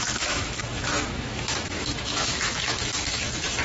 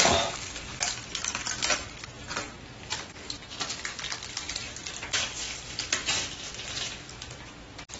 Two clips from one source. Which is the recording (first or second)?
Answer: second